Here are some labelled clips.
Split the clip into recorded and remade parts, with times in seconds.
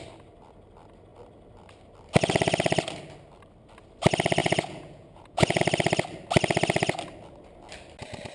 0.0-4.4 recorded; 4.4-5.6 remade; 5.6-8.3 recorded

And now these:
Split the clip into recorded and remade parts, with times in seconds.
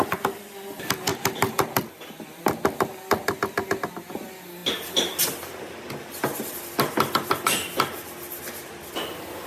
0.0-1.1 recorded; 1.1-2.4 remade; 2.4-9.5 recorded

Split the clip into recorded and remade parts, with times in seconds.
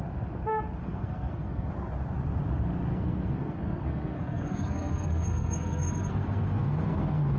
0.0-0.8 recorded; 0.8-1.7 remade; 1.7-2.9 recorded; 2.9-7.4 remade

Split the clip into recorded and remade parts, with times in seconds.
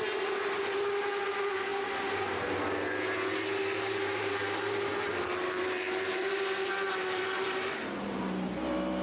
0.0-3.6 recorded; 3.6-8.2 remade; 8.2-9.0 recorded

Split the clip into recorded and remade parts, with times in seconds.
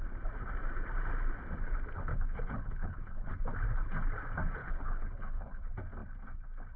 0.0-2.1 recorded; 2.1-3.3 remade; 3.3-4.6 recorded; 4.6-5.6 remade; 5.6-6.8 recorded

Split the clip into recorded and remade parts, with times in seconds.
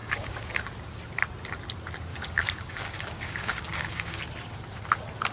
0.0-0.6 remade; 0.6-2.1 recorded; 2.1-4.2 remade; 4.2-5.3 recorded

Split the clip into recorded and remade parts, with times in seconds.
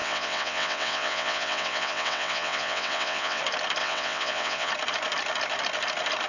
0.0-3.4 remade; 3.4-3.8 recorded; 3.8-4.7 remade; 4.7-6.3 recorded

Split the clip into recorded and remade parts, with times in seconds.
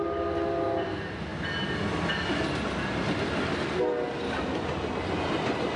0.0-5.8 recorded